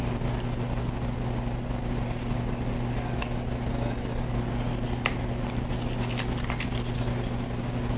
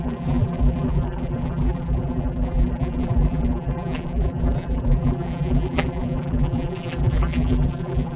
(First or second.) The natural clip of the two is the first